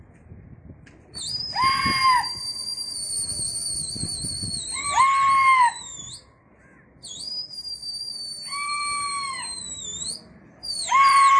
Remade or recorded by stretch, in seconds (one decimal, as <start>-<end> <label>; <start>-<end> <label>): 0.0-11.4 recorded

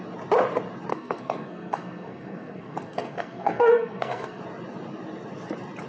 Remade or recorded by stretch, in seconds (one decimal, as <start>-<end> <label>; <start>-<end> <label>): 0.0-0.9 recorded; 0.9-4.4 remade; 4.4-5.9 recorded

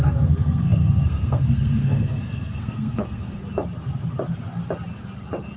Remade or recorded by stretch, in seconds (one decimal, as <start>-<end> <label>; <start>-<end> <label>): 0.0-3.4 remade; 3.4-5.6 recorded